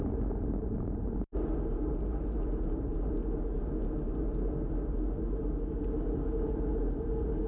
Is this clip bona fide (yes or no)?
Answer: yes